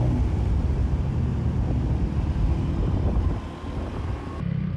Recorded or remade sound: recorded